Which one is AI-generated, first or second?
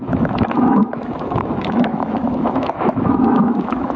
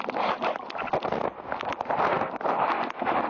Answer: first